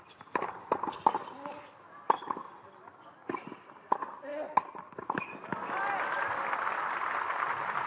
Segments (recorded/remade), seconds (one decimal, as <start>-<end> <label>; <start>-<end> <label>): 0.0-7.9 recorded